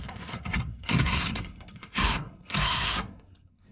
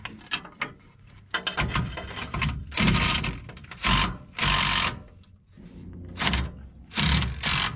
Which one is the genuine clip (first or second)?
second